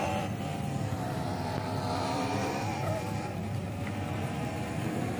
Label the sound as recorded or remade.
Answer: remade